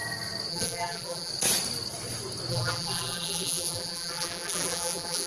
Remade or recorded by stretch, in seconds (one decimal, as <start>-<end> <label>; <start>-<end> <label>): 0.0-0.5 recorded; 0.5-1.3 remade; 1.3-2.5 recorded; 2.5-5.3 remade